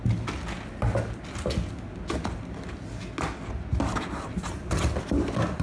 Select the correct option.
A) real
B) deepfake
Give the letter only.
A